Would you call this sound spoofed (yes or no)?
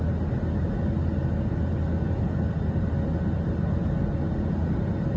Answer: no